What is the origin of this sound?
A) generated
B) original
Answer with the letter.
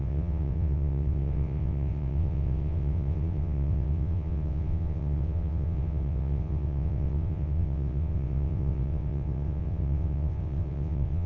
A